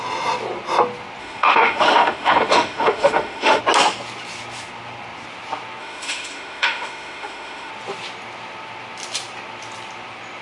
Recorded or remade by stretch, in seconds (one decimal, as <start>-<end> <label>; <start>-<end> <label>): 0.0-1.2 recorded; 1.2-3.6 remade; 3.6-5.8 recorded; 5.8-7.7 remade; 7.7-10.4 recorded